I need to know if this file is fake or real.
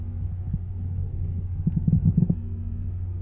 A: fake